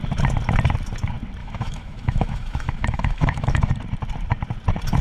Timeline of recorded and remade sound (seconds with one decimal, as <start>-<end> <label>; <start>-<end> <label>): 0.0-1.4 recorded; 1.4-3.7 remade; 3.7-5.0 recorded

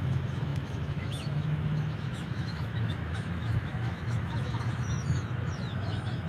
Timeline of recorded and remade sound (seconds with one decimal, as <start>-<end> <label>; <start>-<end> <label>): 0.0-6.3 remade

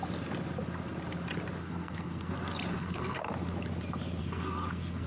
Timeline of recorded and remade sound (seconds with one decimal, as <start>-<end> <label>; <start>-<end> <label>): 0.0-1.6 recorded; 1.6-2.3 remade; 2.3-2.7 recorded; 2.7-3.2 remade; 3.2-4.2 recorded; 4.2-5.1 remade

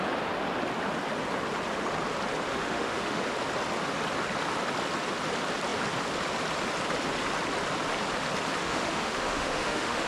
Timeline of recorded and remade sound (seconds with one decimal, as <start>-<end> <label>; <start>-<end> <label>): 0.0-2.5 recorded; 2.5-3.2 remade; 3.2-8.6 recorded; 8.6-10.1 remade

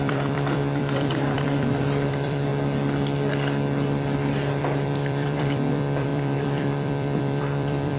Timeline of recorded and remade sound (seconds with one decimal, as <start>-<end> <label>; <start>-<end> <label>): 0.0-2.5 remade; 2.5-4.6 recorded; 4.6-8.0 remade